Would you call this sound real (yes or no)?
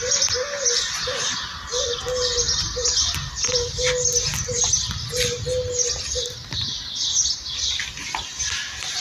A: yes